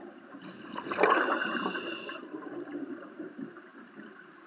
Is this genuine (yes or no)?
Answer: no